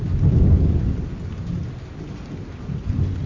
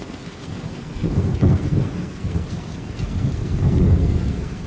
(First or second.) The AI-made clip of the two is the second